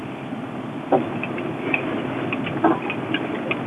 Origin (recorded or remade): recorded